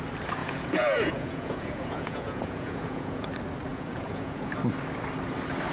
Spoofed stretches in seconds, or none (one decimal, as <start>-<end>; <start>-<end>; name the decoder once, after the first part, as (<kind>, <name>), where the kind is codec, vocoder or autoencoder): 0.4-3.3 (vocoder, Vocos); 3.7-4.5

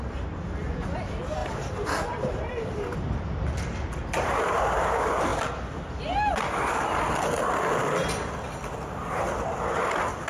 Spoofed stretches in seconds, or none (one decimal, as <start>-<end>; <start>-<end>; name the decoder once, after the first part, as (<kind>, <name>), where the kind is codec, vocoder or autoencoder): 1.4-3.2 (vocoder, BigVGAN v2)

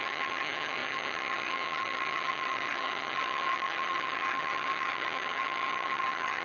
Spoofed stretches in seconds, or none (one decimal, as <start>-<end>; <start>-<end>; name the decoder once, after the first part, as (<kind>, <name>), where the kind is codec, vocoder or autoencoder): 0.0-6.4 (vocoder, HiFi-GAN)

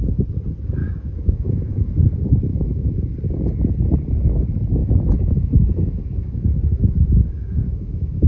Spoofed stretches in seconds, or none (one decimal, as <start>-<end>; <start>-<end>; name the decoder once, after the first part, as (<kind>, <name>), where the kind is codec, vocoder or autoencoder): 0.8-2.0 (autoencoder, DAC-VAE); 2.5-3.1; 4.8-8.3

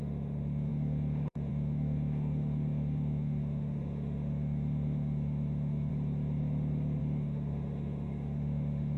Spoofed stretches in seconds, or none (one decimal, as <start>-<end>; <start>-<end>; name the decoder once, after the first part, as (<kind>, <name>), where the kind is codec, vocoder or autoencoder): 0.0-5.9 (autoencoder, DAC-VAE); 7.0-9.0

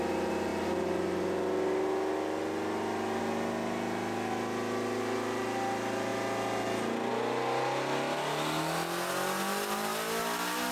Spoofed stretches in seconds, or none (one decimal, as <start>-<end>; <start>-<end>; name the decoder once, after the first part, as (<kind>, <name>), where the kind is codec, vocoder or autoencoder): none